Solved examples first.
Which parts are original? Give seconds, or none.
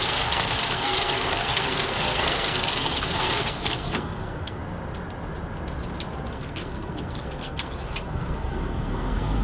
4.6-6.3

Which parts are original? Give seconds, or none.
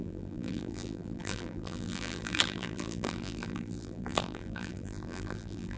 none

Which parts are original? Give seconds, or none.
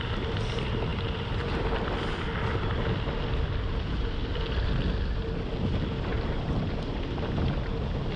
0.0-8.2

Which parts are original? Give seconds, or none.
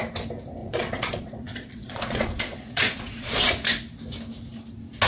0.0-0.6; 3.5-5.1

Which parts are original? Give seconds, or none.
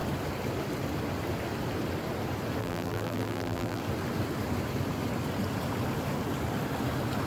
0.0-2.6; 3.8-7.3